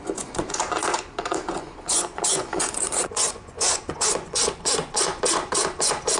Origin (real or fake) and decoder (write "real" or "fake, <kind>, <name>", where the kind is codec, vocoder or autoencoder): fake, vocoder, Vocos